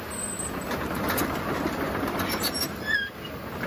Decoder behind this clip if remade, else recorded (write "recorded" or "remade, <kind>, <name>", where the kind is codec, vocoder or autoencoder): recorded